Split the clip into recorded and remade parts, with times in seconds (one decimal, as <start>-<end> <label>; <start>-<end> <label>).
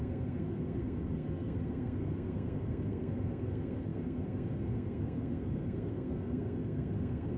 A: 0.0-7.4 remade